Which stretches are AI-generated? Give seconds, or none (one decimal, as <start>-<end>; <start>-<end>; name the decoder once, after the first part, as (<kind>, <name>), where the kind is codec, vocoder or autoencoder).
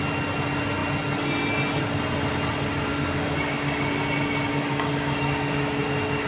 2.9-3.8 (codec, DAC); 4.5-5.8